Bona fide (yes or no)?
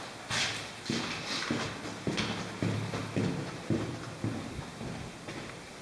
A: yes